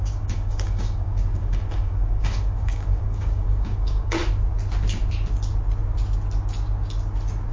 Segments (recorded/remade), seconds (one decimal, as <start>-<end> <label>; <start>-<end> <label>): 0.0-4.2 remade; 4.2-7.5 recorded